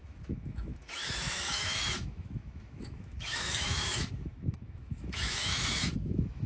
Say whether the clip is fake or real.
fake